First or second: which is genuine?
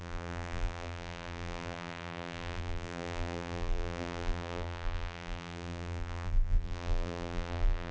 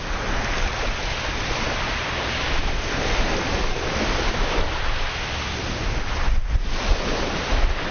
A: second